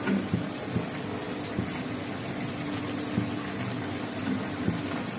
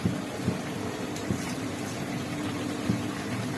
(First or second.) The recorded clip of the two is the first